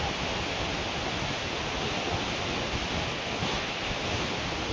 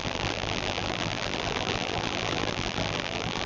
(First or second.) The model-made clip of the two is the second